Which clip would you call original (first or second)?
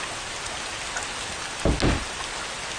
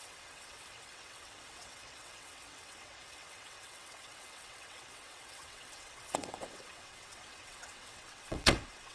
first